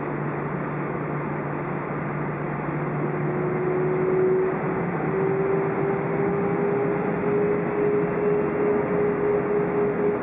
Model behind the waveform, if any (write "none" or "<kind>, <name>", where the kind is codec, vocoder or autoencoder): none